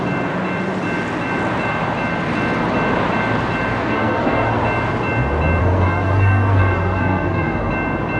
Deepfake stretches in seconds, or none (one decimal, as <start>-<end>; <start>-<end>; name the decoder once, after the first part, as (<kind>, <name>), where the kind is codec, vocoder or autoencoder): 3.8-4.6 (codec, SNAC); 5.6-7.7